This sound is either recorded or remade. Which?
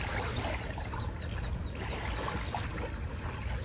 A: recorded